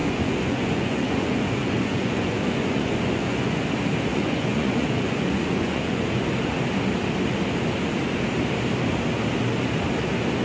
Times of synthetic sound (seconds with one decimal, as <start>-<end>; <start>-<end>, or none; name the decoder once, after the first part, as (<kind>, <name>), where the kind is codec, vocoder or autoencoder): 0.0-3.6 (vocoder, Vocos); 4.1-6.2